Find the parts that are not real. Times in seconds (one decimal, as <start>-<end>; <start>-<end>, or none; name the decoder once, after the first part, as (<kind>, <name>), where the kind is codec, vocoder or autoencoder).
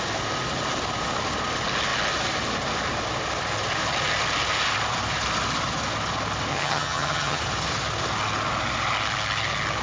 6.5-7.4 (vocoder, HiFi-GAN)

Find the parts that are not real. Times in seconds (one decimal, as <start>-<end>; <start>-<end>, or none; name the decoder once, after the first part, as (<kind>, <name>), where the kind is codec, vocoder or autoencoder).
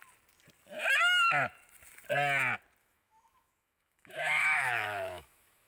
2.8-5.7 (autoencoder, DAC-VAE)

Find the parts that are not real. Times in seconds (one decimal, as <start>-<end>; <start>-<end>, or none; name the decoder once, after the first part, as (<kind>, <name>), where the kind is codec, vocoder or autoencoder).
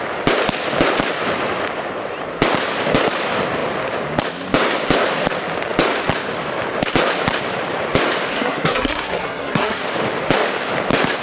8.3-9.8 (codec, SNAC)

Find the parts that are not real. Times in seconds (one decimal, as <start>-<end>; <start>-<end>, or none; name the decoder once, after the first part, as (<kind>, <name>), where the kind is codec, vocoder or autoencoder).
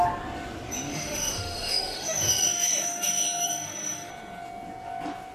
0.9-4.1 (autoencoder, DAC-VAE)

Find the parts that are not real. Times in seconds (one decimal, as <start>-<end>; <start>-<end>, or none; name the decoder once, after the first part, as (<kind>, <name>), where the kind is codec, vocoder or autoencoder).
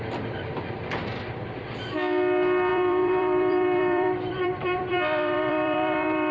2.7-6.3 (vocoder, BigVGAN v2)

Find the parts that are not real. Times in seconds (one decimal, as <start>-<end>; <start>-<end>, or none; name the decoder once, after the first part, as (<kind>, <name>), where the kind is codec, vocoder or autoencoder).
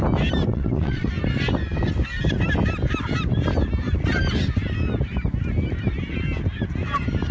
0.5-1.1 (vocoder, WaveNeXt)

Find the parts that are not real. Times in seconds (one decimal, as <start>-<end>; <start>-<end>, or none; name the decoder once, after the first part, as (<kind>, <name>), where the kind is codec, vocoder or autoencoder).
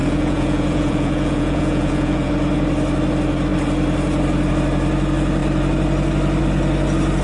0.0-2.3 (vocoder, Vocos)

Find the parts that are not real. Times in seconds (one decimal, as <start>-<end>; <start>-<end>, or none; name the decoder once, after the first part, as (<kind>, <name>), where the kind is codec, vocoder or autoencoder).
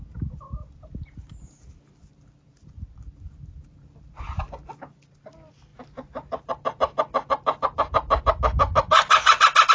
none